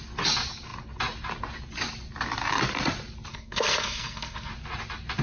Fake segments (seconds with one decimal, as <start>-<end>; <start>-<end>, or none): 3.3-4.5